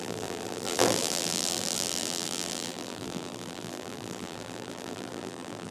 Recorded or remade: remade